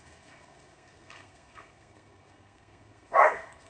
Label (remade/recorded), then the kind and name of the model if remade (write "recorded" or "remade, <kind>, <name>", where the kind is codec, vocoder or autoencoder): remade, codec, SNAC